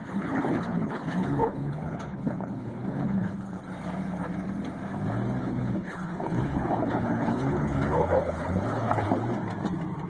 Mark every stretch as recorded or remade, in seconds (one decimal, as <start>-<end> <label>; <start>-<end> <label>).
0.0-3.6 remade; 3.6-5.4 recorded; 5.4-9.1 remade; 9.1-10.1 recorded